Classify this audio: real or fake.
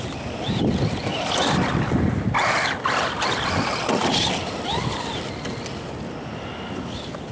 real